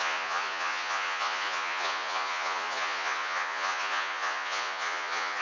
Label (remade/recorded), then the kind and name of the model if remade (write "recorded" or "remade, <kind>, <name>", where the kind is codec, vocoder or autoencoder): remade, vocoder, Vocos